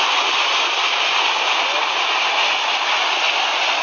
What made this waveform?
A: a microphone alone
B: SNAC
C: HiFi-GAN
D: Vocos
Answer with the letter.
A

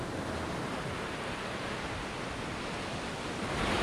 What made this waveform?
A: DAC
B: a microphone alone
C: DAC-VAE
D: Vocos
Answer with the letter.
B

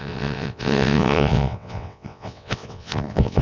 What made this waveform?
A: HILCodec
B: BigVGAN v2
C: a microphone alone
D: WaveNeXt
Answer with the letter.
D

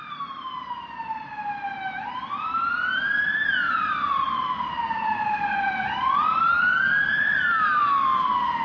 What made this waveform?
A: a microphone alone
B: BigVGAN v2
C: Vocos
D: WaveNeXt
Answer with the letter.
B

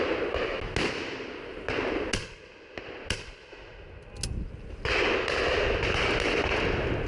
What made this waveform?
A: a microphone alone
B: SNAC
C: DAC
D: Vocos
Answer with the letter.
A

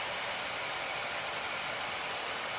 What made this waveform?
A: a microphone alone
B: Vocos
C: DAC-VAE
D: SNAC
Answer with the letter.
A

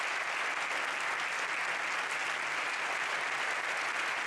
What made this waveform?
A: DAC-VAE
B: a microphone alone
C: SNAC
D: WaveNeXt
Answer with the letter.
B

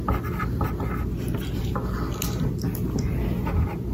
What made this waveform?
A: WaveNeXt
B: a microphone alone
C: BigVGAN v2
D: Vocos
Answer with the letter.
B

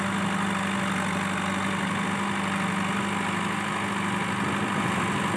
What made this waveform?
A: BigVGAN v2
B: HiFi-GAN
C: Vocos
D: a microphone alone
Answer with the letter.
D